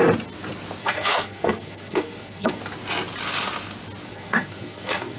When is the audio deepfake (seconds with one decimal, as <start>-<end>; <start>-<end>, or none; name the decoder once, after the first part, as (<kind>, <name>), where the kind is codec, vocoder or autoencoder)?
0.8-2.6 (codec, SNAC); 4.1-5.2